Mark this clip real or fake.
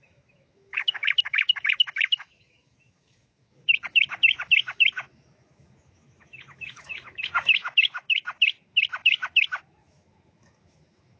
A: fake